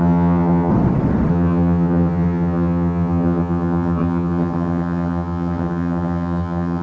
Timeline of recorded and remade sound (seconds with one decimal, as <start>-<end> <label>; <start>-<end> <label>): 0.0-0.7 remade; 0.7-1.3 recorded; 1.3-6.8 remade